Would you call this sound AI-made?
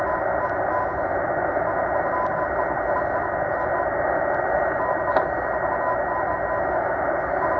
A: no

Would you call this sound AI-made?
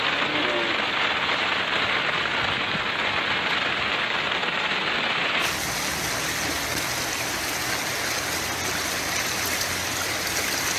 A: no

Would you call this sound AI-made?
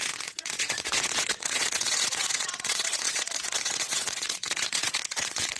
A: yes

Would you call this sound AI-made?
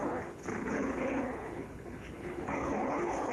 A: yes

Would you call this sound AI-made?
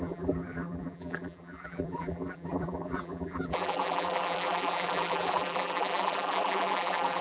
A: yes